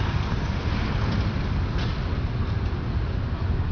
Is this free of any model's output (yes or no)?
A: yes